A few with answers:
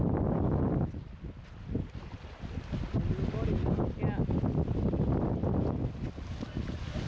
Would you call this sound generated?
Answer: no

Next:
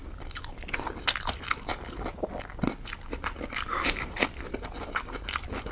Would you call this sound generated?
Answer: no